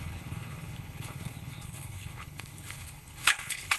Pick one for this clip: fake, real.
fake